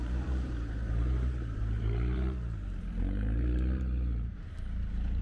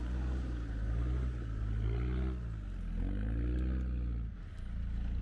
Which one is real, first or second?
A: second